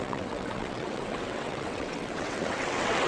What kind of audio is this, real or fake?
fake